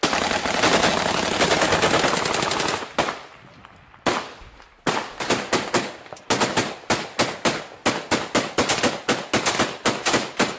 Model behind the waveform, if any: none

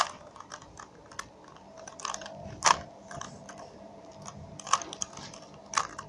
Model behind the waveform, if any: none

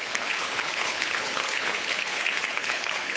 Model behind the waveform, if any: codec, HILCodec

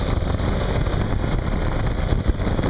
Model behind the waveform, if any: none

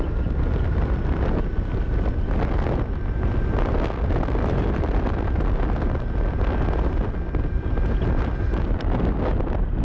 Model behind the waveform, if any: none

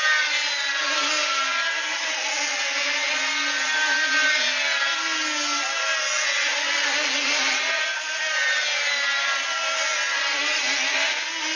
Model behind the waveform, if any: none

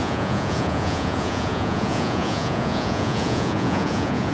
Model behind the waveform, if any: vocoder, Vocos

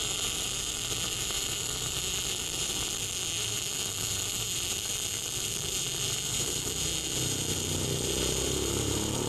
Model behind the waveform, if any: vocoder, BigVGAN v2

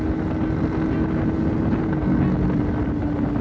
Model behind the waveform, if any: none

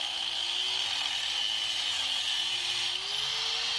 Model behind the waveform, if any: none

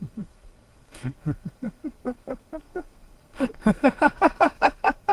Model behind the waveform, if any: codec, SNAC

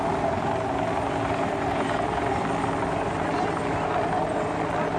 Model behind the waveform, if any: none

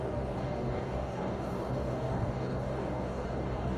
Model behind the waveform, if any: codec, DAC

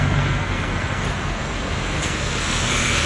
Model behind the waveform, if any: codec, SNAC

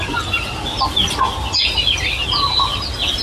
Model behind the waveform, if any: none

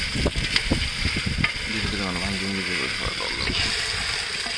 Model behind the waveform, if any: none